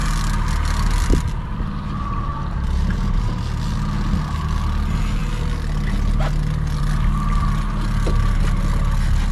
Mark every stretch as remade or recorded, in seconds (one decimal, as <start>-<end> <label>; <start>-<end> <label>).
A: 0.0-2.3 recorded; 2.3-3.4 remade; 3.4-9.3 recorded